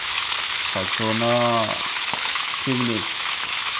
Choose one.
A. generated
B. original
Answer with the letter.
A